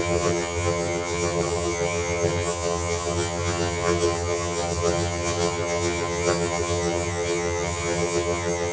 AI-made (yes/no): yes